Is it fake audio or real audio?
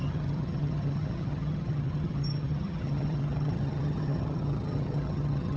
fake